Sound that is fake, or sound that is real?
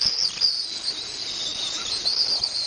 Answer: real